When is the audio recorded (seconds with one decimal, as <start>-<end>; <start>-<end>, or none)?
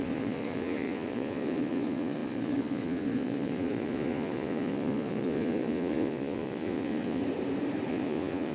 7.2-7.9